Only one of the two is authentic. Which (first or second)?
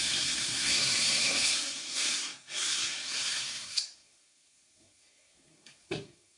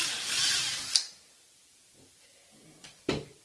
second